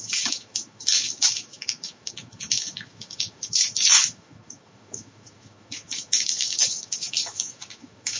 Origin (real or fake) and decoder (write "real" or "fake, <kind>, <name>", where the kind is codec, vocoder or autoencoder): fake, autoencoder, DAC-VAE